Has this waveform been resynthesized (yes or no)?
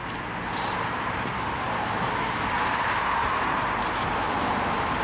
yes